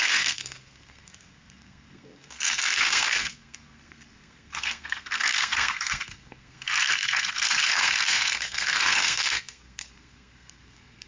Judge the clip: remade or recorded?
remade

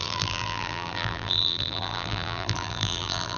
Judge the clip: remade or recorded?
remade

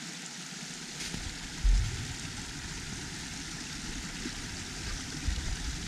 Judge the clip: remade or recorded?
recorded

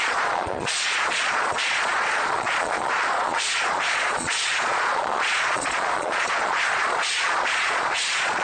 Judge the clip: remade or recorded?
remade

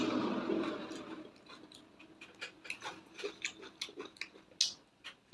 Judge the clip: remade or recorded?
recorded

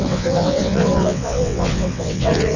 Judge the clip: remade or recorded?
remade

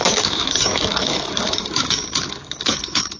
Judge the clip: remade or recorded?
remade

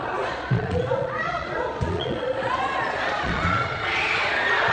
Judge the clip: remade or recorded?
remade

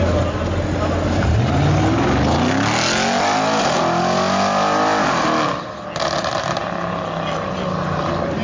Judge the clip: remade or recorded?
recorded